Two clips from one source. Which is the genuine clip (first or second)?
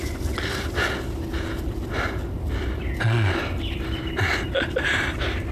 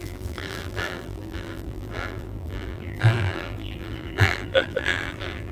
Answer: first